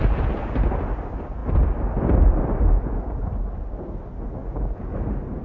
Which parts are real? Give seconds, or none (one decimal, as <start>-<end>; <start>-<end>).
0.0-5.4